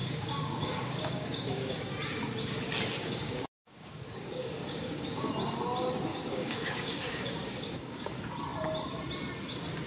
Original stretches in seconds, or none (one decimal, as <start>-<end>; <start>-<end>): 1.8-3.0; 5.3-6.1; 8.1-9.9